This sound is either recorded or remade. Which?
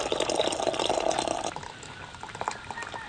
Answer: recorded